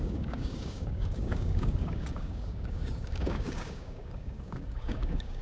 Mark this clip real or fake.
fake